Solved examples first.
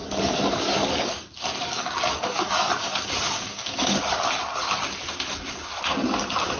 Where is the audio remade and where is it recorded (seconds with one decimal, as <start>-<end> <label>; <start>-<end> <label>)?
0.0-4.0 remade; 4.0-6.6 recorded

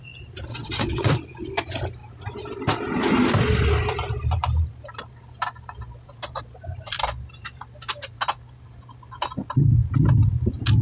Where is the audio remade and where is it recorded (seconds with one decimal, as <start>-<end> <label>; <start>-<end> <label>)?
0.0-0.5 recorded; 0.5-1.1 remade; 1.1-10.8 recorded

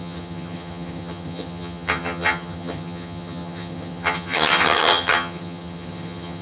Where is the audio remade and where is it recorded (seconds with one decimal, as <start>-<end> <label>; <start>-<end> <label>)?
0.0-6.4 remade

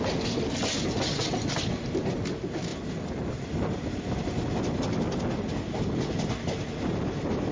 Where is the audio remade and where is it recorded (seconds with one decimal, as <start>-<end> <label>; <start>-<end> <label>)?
0.0-7.5 recorded

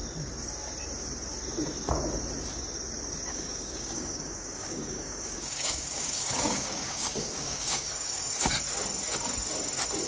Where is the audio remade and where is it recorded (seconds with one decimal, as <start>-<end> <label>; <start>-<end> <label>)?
0.0-3.3 recorded; 3.3-8.5 remade; 8.5-10.1 recorded